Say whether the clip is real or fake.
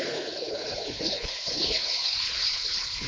fake